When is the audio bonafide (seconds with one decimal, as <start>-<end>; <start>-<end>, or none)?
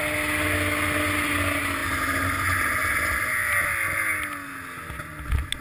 0.0-5.6